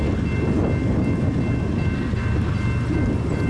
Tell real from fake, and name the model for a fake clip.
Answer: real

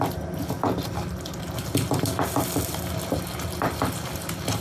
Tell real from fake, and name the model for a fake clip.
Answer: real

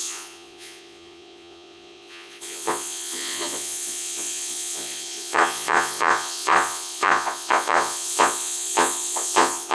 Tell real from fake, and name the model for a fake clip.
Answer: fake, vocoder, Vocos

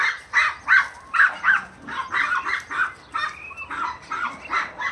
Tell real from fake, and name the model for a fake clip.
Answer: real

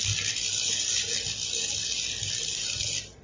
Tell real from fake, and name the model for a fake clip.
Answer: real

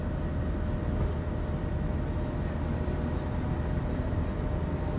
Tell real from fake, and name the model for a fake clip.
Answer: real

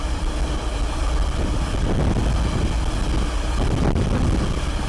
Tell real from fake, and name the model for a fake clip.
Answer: real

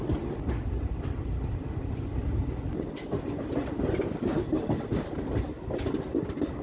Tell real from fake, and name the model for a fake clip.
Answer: real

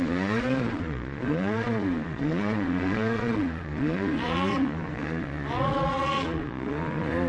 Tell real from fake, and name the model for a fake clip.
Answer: fake, vocoder, Vocos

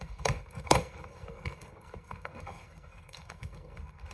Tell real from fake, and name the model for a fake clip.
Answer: fake, codec, SNAC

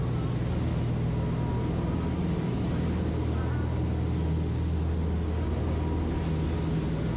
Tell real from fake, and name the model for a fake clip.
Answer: real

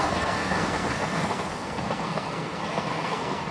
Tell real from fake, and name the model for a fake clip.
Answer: fake, codec, SNAC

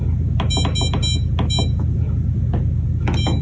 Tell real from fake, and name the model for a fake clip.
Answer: real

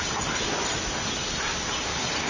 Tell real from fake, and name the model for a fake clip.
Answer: real